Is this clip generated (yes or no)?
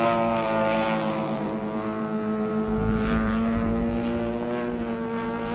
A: yes